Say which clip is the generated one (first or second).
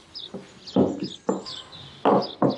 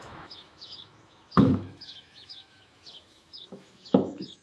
second